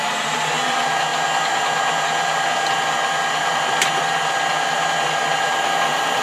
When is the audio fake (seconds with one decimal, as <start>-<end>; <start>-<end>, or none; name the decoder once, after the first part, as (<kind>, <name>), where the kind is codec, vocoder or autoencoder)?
none